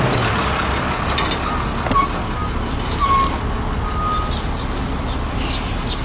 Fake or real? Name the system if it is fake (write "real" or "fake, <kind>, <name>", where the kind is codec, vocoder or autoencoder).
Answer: real